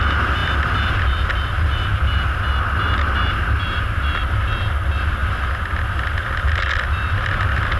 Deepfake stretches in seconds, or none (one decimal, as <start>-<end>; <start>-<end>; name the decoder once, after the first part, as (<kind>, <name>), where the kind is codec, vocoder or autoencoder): none